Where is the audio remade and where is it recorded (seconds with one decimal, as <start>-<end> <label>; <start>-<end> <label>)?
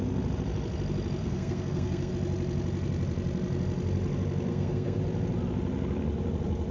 0.0-1.2 recorded; 1.2-2.1 remade; 2.1-4.5 recorded; 4.5-5.0 remade; 5.0-6.7 recorded